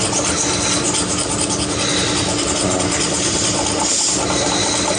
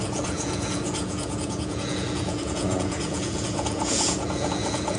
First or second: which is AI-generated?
second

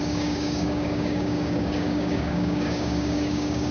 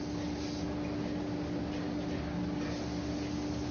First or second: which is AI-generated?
first